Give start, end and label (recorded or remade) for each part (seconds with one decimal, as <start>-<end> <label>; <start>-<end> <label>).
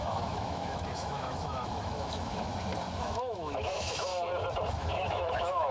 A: 0.0-2.5 remade; 2.5-3.0 recorded; 3.0-4.1 remade; 4.1-4.7 recorded; 4.7-5.7 remade